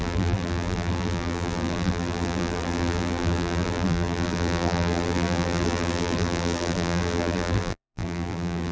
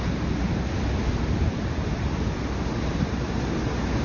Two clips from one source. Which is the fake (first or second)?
first